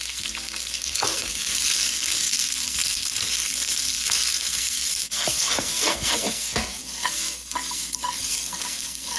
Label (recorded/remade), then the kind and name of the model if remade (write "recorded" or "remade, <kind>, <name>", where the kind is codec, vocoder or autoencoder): remade, codec, SNAC